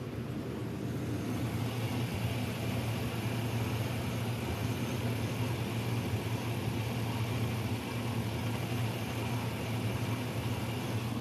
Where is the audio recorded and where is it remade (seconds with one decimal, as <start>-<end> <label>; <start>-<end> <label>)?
0.0-11.2 recorded